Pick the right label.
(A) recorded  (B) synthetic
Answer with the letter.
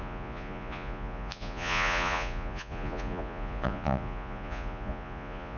B